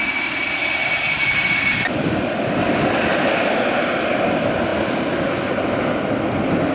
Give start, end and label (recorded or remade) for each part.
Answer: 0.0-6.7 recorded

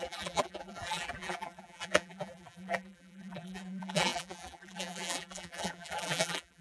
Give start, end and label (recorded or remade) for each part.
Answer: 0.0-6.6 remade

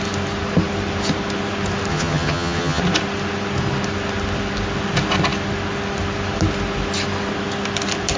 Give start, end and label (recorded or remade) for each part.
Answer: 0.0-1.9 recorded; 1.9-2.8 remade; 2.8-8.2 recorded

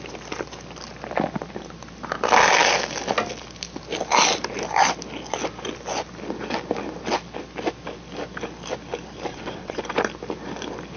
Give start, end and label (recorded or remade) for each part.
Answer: 0.0-9.3 recorded; 9.3-9.8 remade; 9.8-11.0 recorded

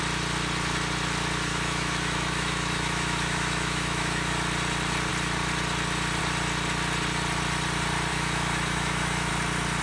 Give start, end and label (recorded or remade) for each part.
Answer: 0.0-1.5 recorded; 1.5-4.3 remade; 4.3-8.1 recorded; 8.1-9.3 remade; 9.3-9.8 recorded

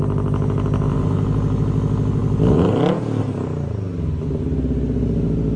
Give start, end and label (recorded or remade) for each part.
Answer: 0.0-5.6 recorded

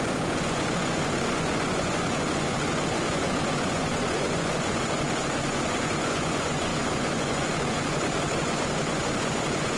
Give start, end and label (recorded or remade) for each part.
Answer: 0.0-9.8 remade